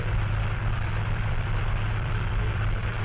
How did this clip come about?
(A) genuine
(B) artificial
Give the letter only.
B